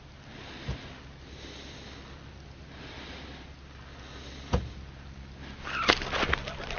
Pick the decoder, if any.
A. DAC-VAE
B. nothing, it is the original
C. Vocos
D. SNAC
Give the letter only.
B